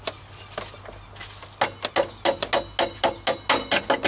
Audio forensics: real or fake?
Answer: real